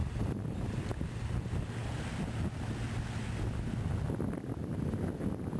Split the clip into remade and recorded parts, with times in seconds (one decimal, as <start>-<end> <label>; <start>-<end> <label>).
0.0-5.6 recorded